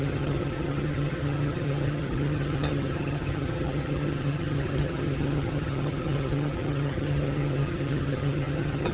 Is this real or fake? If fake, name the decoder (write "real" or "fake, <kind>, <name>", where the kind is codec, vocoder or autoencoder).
fake, vocoder, HiFi-GAN